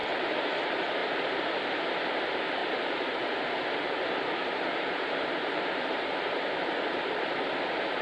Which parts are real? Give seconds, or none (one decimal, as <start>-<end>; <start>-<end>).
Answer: 0.5-2.6; 7.0-8.0